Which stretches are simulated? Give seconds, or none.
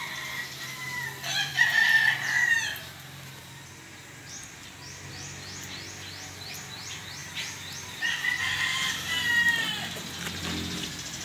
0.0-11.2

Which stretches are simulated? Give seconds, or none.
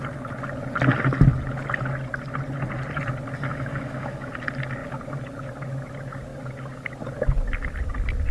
3.5-4.3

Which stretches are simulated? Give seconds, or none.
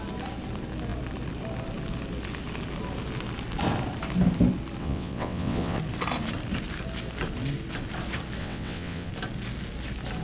4.8-5.8; 8.4-9.1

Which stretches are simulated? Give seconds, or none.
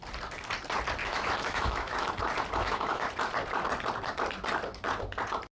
1.0-2.1; 2.6-3.1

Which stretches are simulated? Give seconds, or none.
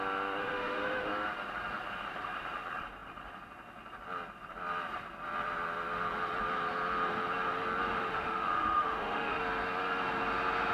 0.4-1.1; 8.1-9.4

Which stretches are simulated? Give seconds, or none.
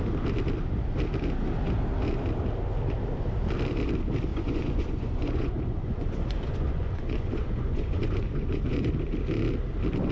4.3-8.9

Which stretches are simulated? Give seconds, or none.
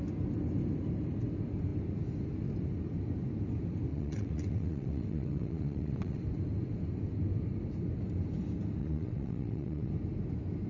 3.9-6.2; 8.8-9.9